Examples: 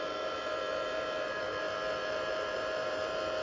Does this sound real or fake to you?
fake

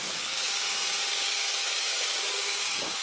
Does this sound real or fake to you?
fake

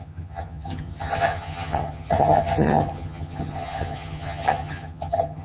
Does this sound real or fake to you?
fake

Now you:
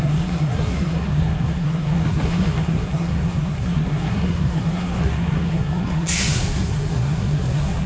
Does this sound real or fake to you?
fake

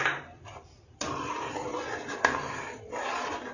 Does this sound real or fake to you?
real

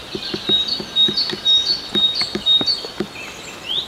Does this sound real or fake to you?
real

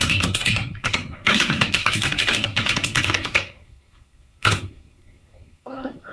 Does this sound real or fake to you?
fake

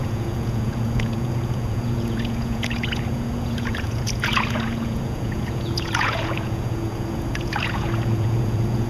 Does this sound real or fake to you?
fake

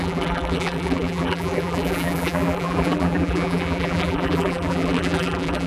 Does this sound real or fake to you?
fake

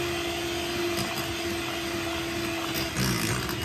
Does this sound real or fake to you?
real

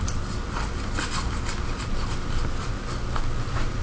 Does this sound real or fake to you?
real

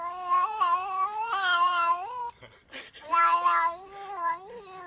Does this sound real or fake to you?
fake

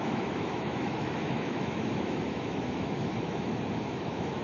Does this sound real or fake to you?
fake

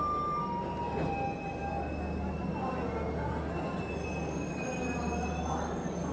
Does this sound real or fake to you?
real